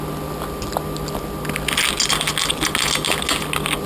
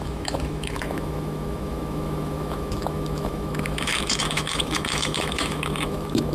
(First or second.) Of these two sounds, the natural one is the first